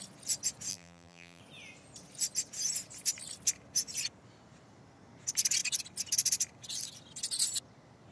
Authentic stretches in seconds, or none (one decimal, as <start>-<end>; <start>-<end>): 0.0-0.7; 1.4-8.1